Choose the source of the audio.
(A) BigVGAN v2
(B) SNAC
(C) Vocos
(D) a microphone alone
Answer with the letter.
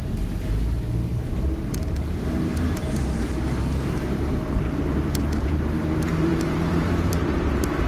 A